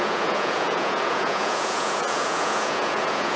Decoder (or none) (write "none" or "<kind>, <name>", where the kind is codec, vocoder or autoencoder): vocoder, Vocos